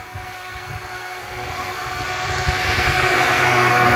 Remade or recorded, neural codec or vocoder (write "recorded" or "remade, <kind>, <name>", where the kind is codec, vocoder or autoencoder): remade, codec, SNAC